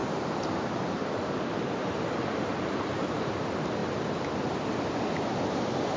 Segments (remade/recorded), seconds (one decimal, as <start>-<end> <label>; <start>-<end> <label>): 0.0-3.3 remade; 3.3-3.8 recorded; 3.8-5.0 remade; 5.0-6.0 recorded